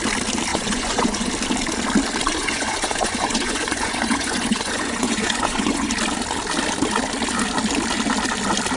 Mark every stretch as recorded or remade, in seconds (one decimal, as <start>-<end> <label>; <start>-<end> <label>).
0.0-0.5 recorded; 0.5-1.3 remade; 1.3-2.3 recorded; 2.3-5.9 remade; 5.9-8.8 recorded

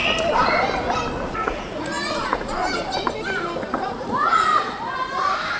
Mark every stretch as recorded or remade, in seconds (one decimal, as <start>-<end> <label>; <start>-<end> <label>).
0.0-1.1 recorded; 1.1-2.6 remade; 2.6-3.7 recorded; 3.7-4.5 remade; 4.5-5.6 recorded

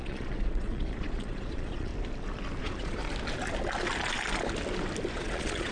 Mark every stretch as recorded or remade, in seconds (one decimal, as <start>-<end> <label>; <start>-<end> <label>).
0.0-1.9 remade; 1.9-2.6 recorded; 2.6-3.0 remade; 3.0-5.1 recorded; 5.1-5.7 remade

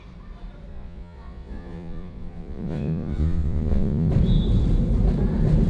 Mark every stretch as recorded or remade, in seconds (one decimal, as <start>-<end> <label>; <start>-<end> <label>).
0.0-0.7 recorded; 0.7-4.1 remade; 4.1-5.7 recorded

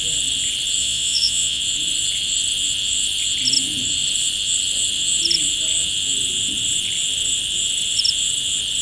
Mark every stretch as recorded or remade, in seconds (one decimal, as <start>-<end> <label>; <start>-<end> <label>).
0.0-0.8 recorded; 0.8-1.6 remade; 1.6-8.8 recorded

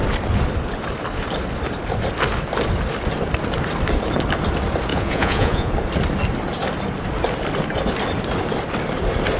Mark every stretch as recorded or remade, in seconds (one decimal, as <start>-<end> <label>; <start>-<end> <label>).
0.0-4.9 recorded; 4.9-5.7 remade; 5.7-9.4 recorded